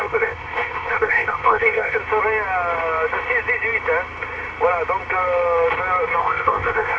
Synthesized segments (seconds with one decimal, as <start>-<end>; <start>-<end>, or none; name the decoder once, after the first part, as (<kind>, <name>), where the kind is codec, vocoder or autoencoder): 0.0-2.0 (codec, ZipCodec); 6.2-7.0